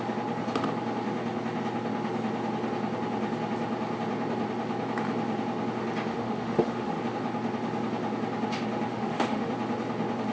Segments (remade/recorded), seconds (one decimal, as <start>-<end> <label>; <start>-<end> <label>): 0.0-6.1 recorded; 6.1-7.0 remade; 7.0-8.9 recorded; 8.9-9.5 remade; 9.5-10.3 recorded